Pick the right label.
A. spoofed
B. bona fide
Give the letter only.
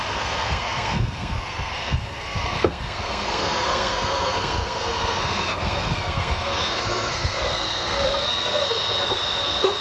A